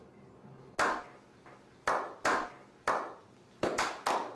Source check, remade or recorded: recorded